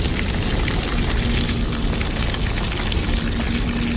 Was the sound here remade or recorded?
recorded